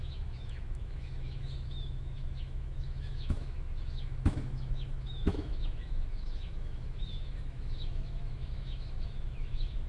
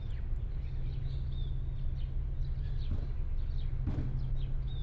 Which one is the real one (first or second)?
second